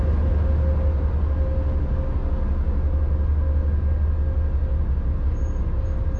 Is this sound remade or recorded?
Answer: recorded